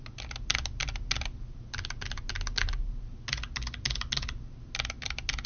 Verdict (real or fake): real